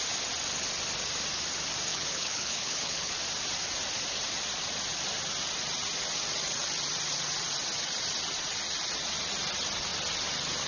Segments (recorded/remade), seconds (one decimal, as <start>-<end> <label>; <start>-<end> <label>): 0.0-1.9 recorded; 1.9-3.1 remade; 3.1-10.7 recorded